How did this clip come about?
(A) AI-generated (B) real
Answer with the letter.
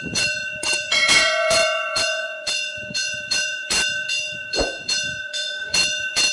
A